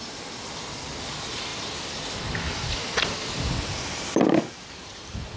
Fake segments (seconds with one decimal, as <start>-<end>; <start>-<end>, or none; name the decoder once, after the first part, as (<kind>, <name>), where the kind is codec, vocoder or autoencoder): none